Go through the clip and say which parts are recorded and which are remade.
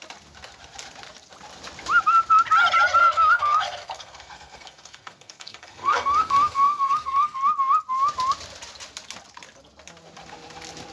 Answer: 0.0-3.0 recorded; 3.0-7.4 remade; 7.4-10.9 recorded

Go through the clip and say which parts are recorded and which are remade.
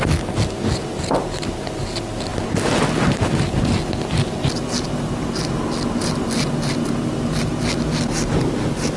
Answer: 0.0-9.0 recorded